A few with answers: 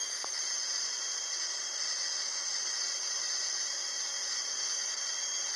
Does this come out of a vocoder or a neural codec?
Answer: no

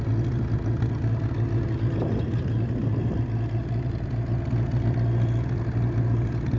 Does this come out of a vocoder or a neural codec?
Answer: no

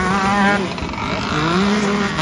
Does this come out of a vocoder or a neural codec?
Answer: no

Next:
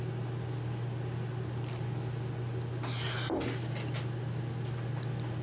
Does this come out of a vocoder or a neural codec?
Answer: no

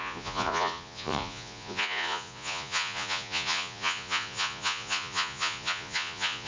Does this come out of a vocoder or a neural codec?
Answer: yes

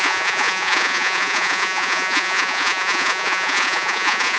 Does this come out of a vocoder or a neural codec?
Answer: yes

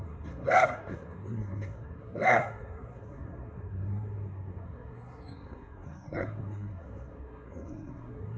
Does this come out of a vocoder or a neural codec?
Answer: yes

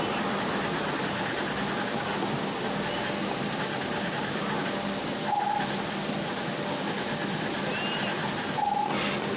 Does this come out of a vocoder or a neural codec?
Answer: no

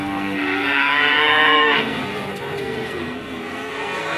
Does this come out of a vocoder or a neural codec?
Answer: yes